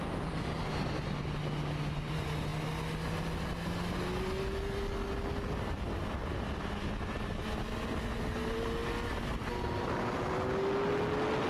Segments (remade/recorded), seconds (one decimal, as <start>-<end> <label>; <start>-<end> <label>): 0.0-11.5 recorded